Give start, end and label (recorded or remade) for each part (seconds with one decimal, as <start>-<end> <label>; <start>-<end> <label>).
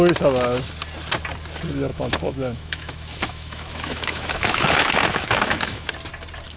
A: 0.0-1.9 recorded; 1.9-5.9 remade; 5.9-6.6 recorded